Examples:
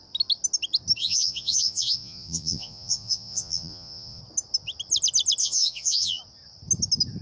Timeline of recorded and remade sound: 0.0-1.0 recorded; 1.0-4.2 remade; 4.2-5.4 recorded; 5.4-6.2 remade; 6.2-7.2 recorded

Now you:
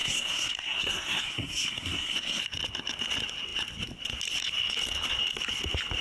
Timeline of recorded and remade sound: 0.0-2.4 remade; 2.4-6.0 recorded

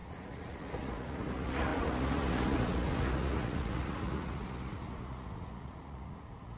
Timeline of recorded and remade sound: 0.0-6.6 remade

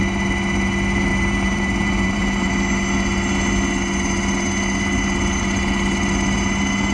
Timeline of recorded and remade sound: 0.0-1.1 recorded; 1.1-2.5 remade; 2.5-6.9 recorded

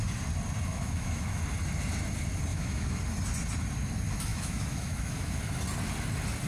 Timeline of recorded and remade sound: 0.0-0.7 recorded; 0.7-1.4 remade; 1.4-2.5 recorded; 2.5-3.0 remade; 3.0-4.3 recorded; 4.3-5.4 remade; 5.4-6.5 recorded

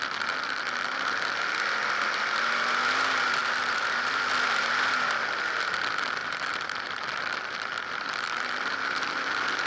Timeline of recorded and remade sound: 0.0-3.4 recorded; 3.4-4.3 remade; 4.3-6.2 recorded; 6.2-9.0 remade; 9.0-9.7 recorded

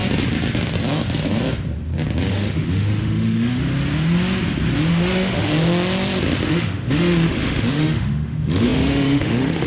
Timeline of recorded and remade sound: 0.0-2.3 recorded; 2.3-3.7 remade; 3.7-4.9 recorded; 4.9-5.5 remade; 5.5-6.5 recorded; 6.5-9.7 remade

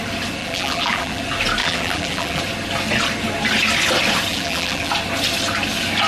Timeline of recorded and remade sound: 0.0-0.4 recorded; 0.4-1.2 remade; 1.2-1.6 recorded; 1.6-2.4 remade; 2.4-4.3 recorded; 4.3-4.9 remade; 4.9-6.1 recorded